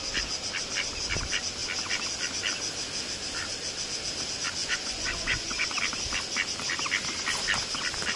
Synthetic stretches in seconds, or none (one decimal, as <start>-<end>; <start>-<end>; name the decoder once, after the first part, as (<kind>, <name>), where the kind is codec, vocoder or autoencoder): 4.6-5.8 (vocoder, Vocos)